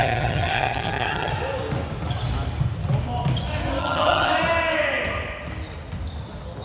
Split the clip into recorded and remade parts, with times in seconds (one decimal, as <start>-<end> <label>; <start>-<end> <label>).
0.0-1.3 remade; 1.3-3.8 recorded; 3.8-4.3 remade; 4.3-6.6 recorded